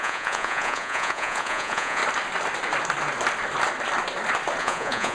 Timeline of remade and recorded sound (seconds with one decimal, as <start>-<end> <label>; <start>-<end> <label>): 0.0-2.0 remade; 2.0-4.6 recorded; 4.6-5.1 remade